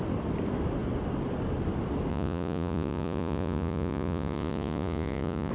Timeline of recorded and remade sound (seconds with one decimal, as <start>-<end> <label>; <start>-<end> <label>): 0.0-2.1 recorded; 2.1-5.5 remade